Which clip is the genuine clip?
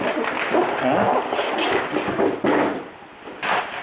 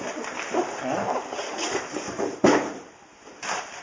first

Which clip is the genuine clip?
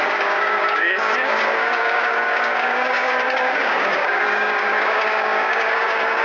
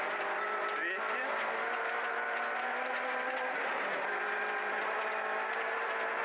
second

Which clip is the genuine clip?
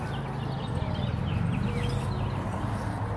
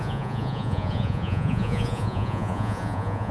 first